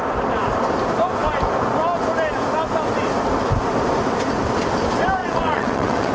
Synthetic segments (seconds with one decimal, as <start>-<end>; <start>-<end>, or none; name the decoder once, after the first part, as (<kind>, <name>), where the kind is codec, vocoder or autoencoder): 5.2-6.1 (vocoder, WaveNeXt)